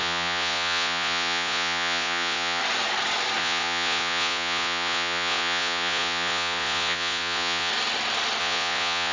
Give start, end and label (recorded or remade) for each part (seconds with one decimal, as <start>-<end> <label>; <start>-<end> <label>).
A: 0.0-2.6 remade; 2.6-3.4 recorded; 3.4-7.7 remade; 7.7-8.4 recorded; 8.4-9.1 remade